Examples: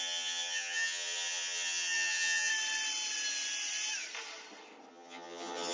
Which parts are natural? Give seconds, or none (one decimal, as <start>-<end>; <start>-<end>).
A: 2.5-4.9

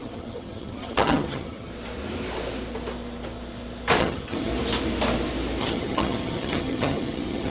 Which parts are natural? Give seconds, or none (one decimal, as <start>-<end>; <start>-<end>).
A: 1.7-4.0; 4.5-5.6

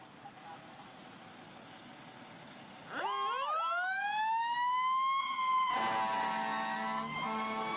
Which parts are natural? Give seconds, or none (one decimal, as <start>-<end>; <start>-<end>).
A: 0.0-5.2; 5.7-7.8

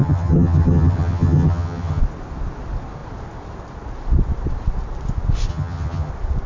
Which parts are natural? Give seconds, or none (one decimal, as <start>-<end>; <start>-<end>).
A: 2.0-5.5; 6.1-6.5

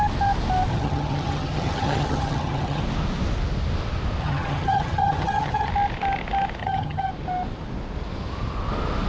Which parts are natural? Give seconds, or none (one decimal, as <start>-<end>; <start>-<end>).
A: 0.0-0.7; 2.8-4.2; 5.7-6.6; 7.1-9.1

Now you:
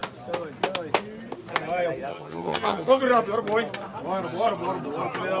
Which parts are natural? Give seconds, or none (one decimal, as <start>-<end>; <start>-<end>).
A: 0.0-2.1; 3.0-5.4

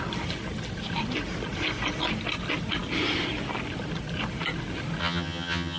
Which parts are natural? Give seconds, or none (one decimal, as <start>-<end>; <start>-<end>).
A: 0.0-5.0